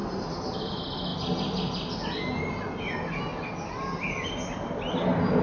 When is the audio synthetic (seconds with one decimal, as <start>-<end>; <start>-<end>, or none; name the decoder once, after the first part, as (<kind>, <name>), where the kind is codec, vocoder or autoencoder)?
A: none